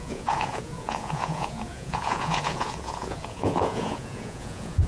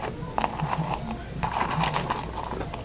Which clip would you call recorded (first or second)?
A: second